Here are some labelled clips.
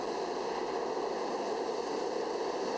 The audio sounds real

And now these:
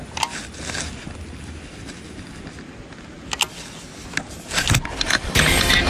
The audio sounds real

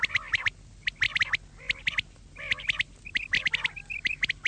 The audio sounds real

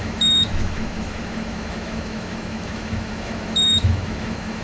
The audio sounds fake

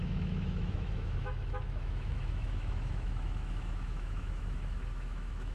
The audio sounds fake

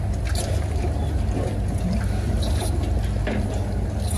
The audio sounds real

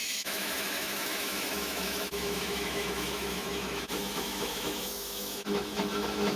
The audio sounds fake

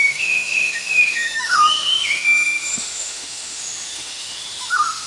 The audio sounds fake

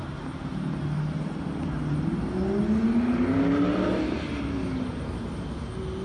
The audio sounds real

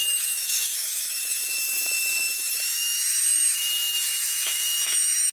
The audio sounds fake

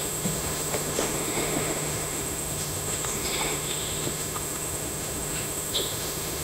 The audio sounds fake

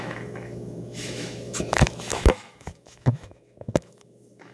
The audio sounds fake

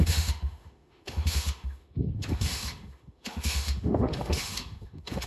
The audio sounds fake